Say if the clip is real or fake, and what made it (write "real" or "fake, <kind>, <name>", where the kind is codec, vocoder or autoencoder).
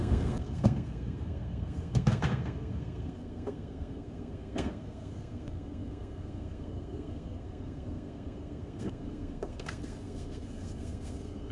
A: fake, codec, SNAC